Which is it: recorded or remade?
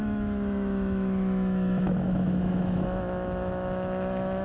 remade